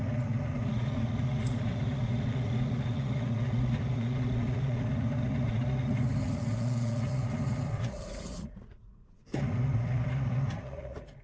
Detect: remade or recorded remade